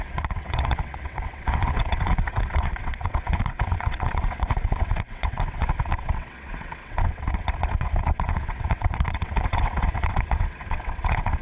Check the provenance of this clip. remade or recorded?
remade